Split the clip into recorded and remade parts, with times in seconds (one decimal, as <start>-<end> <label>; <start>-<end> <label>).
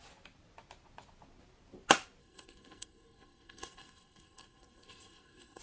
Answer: 0.0-2.2 recorded; 2.2-5.6 remade